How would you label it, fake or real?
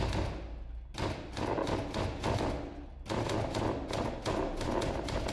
real